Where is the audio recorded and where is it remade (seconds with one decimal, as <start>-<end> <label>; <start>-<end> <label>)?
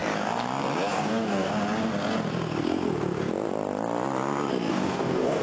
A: 0.0-0.9 recorded; 0.9-1.5 remade; 1.5-4.7 recorded; 4.7-5.4 remade